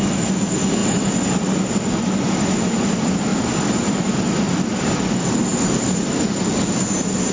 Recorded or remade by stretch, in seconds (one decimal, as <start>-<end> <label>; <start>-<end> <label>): 0.0-7.3 recorded